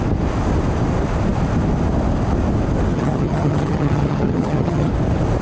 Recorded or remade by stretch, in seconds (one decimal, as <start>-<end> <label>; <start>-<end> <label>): 0.0-2.9 recorded; 2.9-4.9 remade; 4.9-5.4 recorded